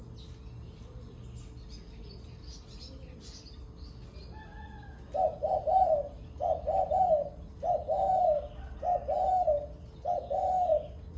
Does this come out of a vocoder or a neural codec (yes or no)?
no